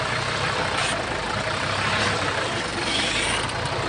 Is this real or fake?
fake